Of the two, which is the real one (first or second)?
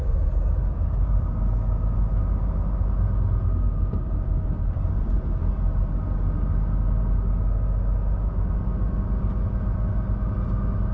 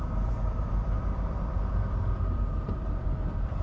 first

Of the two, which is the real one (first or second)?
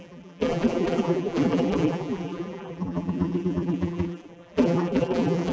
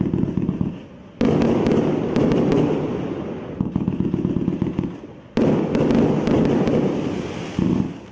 second